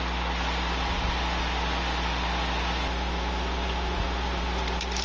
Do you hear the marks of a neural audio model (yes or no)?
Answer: no